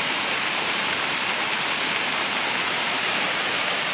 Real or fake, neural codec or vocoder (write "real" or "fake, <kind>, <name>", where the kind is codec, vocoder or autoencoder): fake, vocoder, BigVGAN v2